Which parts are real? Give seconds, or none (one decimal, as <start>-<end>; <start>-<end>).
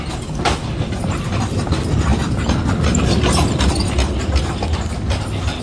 0.0-5.6